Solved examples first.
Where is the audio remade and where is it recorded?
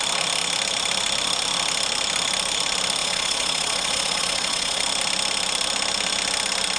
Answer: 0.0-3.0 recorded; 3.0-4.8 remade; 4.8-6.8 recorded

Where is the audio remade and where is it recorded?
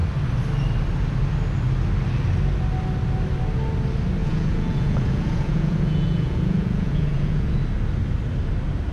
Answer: 0.0-4.2 recorded; 4.2-7.6 remade; 7.6-8.9 recorded